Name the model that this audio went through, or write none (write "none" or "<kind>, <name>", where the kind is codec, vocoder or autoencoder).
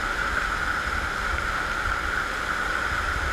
none